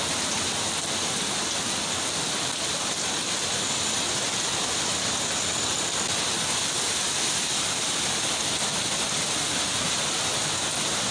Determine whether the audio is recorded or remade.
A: recorded